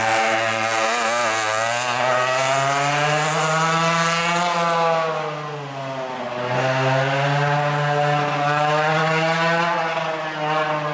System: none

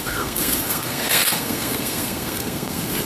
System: codec, SNAC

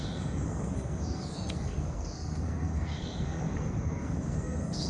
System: codec, SNAC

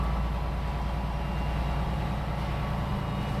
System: none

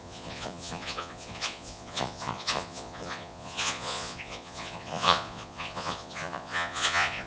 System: vocoder, Vocos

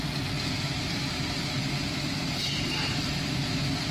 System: none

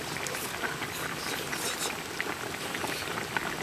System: none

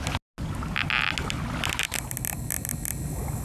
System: none